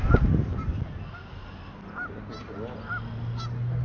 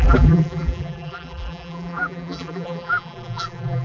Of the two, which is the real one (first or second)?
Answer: first